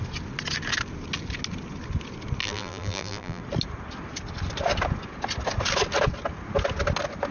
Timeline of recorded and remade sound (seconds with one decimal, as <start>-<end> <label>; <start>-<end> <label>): 0.0-2.4 recorded; 2.4-3.4 remade; 3.4-7.3 recorded